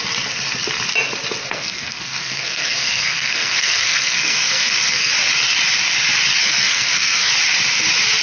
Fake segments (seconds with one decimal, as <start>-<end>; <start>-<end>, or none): 1.4-5.1; 6.4-7.3